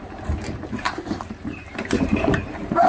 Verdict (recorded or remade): remade